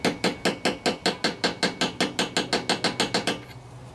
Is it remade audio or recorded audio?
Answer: recorded